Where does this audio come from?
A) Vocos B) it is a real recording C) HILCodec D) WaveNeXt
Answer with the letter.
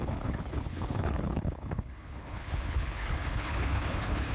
C